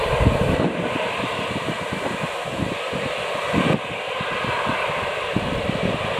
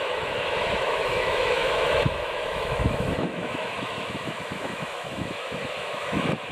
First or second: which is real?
first